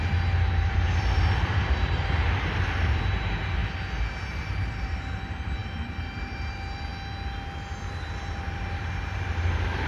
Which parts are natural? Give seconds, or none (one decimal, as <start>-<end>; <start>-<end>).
3.6-4.3; 6.9-7.7